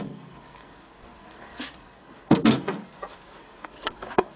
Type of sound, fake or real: fake